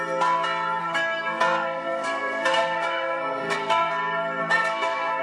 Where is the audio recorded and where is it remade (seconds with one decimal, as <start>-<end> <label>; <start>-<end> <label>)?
0.0-0.8 recorded; 0.8-3.9 remade; 3.9-4.4 recorded; 4.4-5.2 remade